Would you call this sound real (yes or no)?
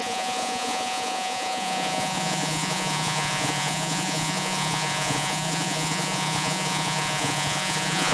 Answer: no